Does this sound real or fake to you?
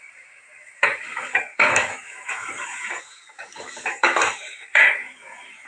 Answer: fake